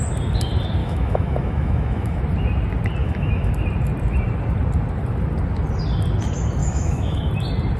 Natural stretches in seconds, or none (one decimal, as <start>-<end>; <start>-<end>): 0.0-0.8; 2.2-3.0; 3.5-6.6; 7.3-7.8